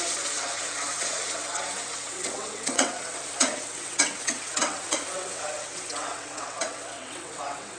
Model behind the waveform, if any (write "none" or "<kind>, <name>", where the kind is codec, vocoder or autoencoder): vocoder, WaveNeXt